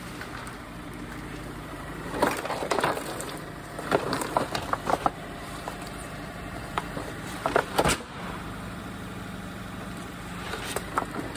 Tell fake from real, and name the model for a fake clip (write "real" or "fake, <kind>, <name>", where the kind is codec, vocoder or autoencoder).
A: fake, vocoder, BigVGAN v2